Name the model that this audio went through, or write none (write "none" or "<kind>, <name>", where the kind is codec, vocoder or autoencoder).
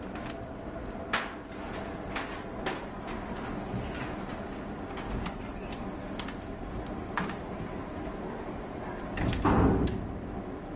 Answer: none